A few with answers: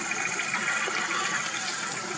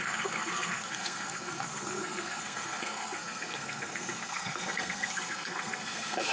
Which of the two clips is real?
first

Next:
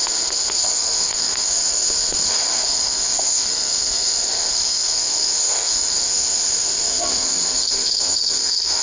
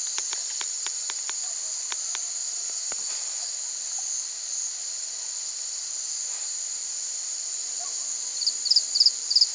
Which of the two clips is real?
second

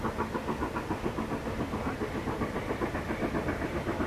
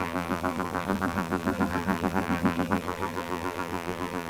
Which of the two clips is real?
first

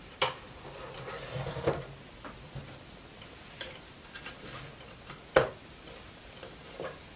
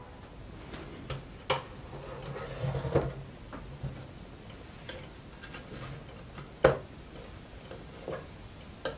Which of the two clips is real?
second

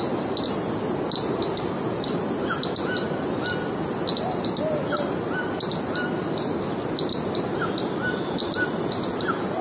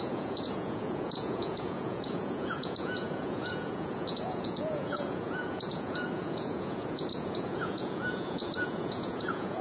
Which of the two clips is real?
first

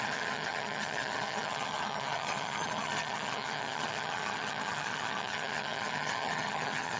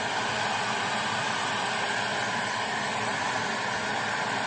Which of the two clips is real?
second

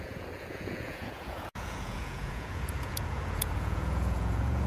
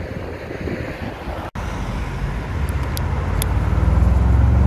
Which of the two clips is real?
second